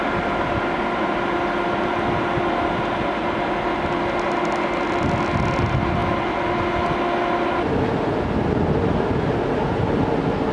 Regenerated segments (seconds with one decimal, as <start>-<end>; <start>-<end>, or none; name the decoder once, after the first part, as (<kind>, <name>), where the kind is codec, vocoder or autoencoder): none